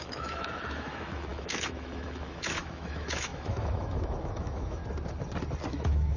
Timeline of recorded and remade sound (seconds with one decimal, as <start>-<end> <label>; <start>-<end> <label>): 0.0-4.8 remade; 4.8-5.7 recorded; 5.7-6.2 remade